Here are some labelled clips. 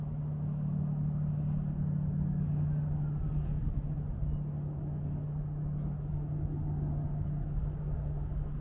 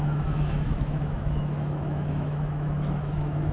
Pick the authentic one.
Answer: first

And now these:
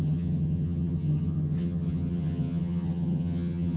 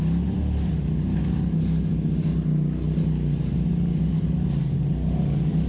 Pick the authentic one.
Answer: second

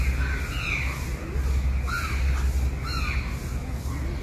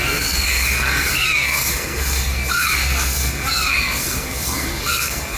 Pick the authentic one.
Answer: first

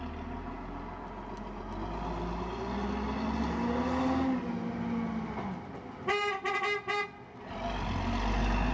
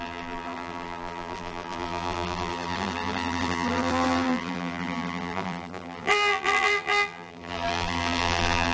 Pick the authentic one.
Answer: first